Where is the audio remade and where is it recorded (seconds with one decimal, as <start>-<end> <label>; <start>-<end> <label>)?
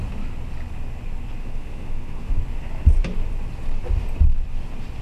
0.0-1.4 recorded; 1.4-2.4 remade; 2.4-5.0 recorded